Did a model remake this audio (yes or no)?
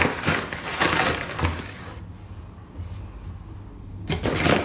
no